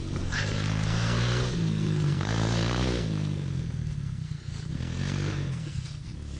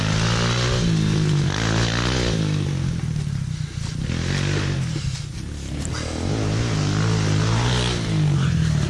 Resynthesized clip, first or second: first